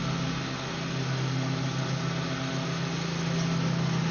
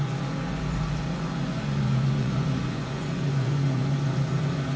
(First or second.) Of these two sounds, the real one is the first